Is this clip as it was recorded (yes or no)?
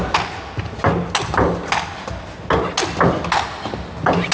yes